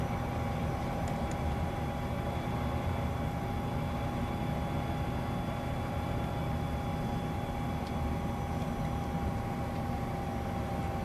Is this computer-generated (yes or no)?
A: no